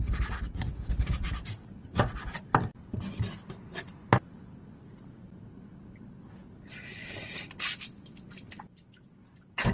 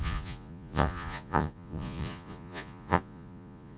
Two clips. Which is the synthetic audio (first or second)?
second